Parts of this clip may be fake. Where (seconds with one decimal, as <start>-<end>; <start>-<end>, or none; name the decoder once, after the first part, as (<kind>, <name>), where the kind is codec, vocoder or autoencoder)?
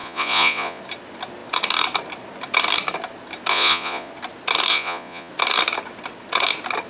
0.0-0.8 (vocoder, Vocos); 3.5-4.1; 4.7-5.3